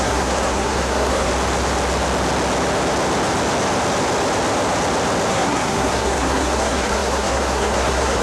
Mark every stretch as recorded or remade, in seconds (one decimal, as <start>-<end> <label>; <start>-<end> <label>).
0.0-1.3 remade; 1.3-5.3 recorded; 5.3-8.2 remade